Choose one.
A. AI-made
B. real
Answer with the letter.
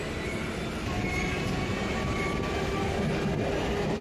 B